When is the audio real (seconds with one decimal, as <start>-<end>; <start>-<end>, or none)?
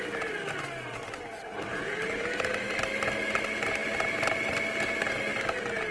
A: 0.0-1.5; 2.3-5.9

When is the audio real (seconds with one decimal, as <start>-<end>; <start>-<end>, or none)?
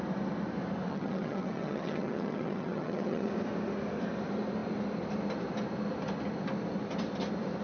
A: 0.0-0.9; 3.3-7.6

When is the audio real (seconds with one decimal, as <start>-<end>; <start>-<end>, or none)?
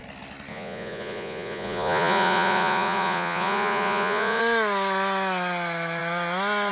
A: 0.0-0.5; 4.4-6.7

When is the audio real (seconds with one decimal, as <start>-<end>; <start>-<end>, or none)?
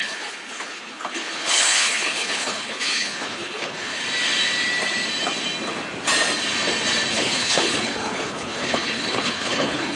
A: 4.0-7.1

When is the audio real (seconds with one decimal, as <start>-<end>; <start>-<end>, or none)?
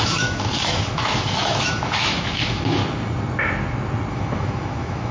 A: 2.8-4.1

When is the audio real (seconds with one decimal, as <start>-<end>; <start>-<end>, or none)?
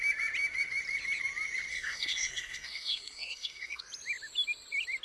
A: 0.0-1.7; 3.8-5.0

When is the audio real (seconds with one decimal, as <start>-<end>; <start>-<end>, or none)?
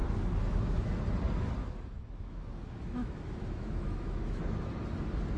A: 0.9-1.6; 4.4-5.4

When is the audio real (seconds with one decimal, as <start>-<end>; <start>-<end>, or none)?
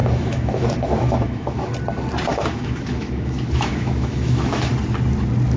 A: 1.7-2.3; 4.7-5.6